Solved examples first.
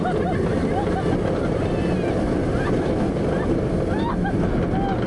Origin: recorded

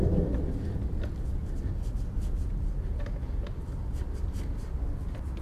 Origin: recorded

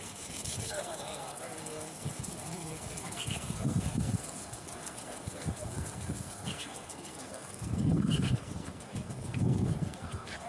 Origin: remade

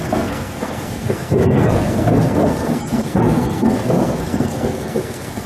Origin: remade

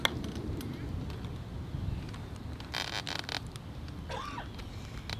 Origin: recorded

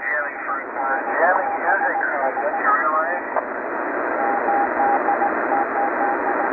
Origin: recorded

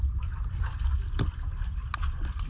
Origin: recorded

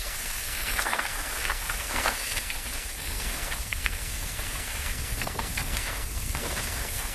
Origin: remade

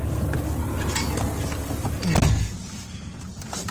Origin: recorded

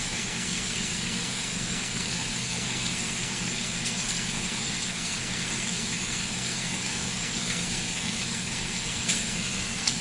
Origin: remade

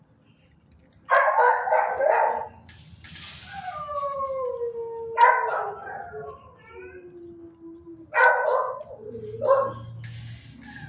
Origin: recorded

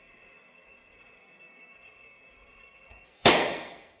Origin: remade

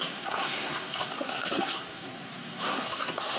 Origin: remade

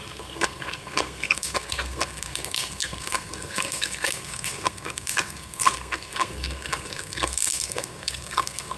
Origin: remade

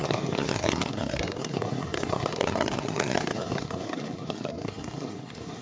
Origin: remade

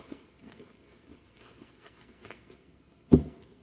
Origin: remade